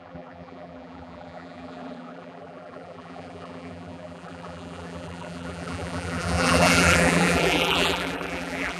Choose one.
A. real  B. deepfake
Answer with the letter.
B